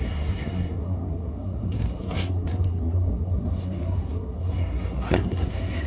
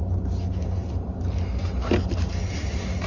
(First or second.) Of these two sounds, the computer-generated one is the first